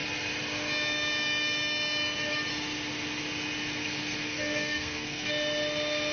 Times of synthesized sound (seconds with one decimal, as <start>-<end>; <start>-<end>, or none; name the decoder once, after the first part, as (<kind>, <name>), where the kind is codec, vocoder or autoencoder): 3.8-5.3 (codec, SNAC)